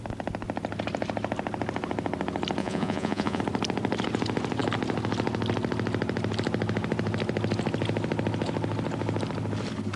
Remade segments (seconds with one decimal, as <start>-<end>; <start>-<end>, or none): 2.6-3.4